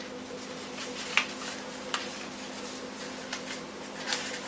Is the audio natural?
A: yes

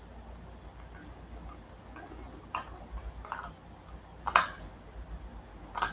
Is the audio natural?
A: yes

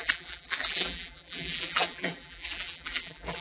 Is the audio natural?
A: no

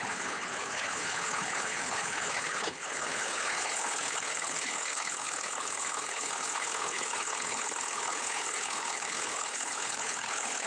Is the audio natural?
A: no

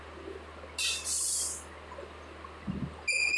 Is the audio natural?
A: yes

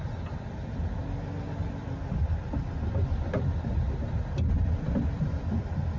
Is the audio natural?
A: yes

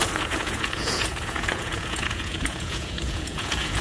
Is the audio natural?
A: no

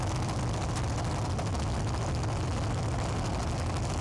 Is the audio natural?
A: yes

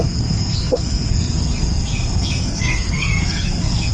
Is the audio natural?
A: no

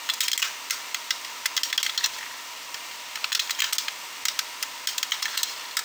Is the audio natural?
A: yes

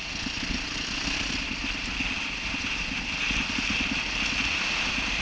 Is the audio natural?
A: yes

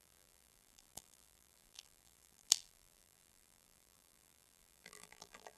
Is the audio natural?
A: no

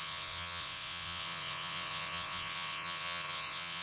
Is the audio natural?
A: no